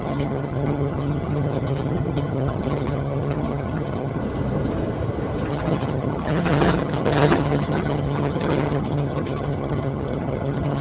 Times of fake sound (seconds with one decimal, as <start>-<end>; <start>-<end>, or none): 0.0-4.2; 5.5-10.8